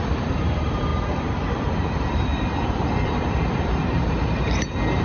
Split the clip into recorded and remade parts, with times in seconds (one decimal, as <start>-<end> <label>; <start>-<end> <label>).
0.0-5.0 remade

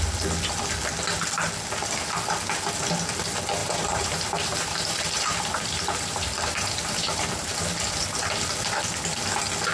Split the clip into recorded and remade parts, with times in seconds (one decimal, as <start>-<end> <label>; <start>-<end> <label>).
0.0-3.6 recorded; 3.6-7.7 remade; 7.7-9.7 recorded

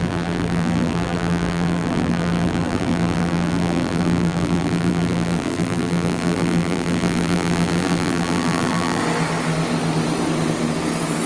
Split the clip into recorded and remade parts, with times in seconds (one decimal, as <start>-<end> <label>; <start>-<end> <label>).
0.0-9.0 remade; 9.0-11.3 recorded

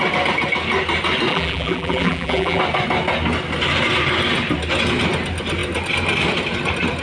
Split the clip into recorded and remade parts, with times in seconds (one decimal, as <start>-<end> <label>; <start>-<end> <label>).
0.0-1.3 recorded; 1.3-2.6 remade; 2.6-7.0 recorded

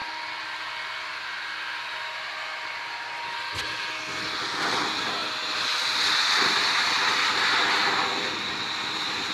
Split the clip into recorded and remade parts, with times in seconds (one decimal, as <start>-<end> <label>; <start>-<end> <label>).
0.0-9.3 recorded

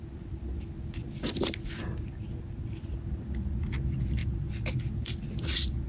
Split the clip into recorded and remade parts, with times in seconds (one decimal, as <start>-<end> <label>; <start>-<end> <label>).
0.0-5.9 recorded

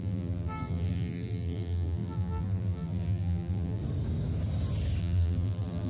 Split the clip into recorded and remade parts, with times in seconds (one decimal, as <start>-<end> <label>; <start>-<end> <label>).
0.0-3.8 remade; 3.8-5.0 recorded; 5.0-5.9 remade